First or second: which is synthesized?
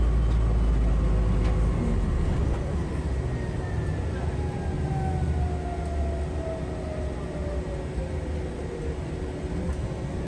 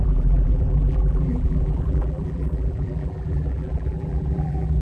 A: second